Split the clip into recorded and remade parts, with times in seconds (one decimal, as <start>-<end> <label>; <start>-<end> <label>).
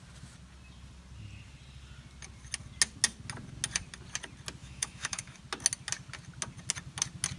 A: 0.0-4.6 recorded; 4.6-5.4 remade; 5.4-7.4 recorded